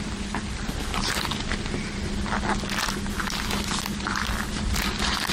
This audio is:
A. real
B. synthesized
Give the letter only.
A